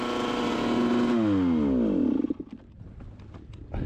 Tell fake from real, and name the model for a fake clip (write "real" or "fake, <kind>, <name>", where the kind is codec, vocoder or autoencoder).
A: real